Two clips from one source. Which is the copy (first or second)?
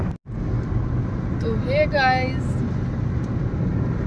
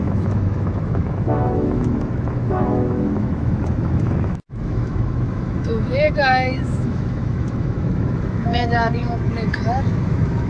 second